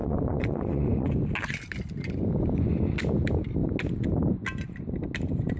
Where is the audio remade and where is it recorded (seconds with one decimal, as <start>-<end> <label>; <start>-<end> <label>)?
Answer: 0.0-1.1 remade; 1.1-5.6 recorded